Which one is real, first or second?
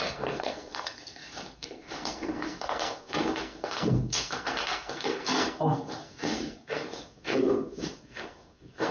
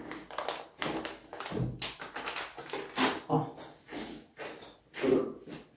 second